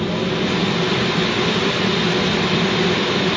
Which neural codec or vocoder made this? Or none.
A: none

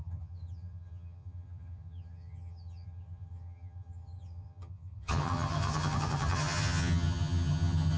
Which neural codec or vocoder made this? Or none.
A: vocoder, HiFi-GAN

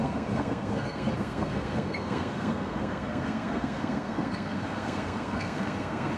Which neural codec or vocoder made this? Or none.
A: codec, SNAC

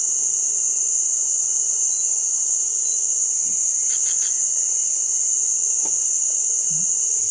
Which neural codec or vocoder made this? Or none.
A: none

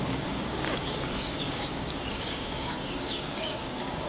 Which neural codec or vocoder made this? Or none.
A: codec, DAC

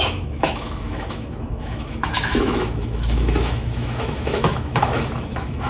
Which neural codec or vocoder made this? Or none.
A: autoencoder, DAC-VAE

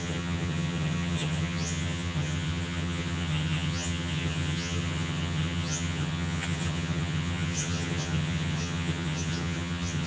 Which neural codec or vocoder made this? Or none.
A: vocoder, HiFi-GAN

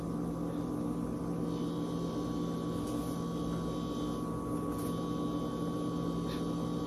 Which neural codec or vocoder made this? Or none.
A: none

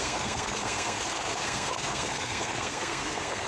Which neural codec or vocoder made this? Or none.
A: codec, SNAC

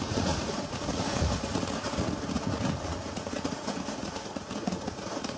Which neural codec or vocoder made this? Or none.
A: vocoder, Vocos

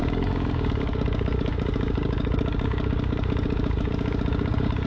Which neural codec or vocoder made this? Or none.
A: codec, DAC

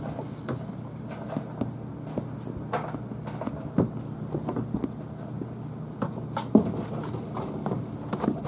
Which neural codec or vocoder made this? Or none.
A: none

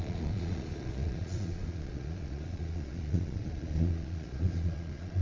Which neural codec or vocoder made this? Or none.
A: vocoder, Vocos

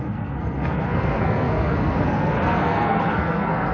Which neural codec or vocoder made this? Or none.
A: codec, SNAC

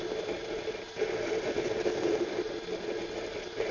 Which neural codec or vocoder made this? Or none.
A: none